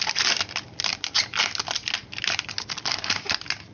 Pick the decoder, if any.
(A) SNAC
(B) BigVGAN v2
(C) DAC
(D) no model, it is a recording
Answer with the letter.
D